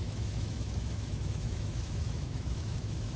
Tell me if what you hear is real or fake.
fake